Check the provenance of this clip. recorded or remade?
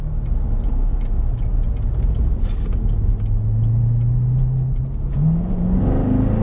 recorded